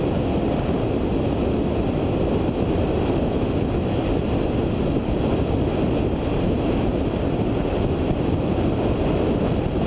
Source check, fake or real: real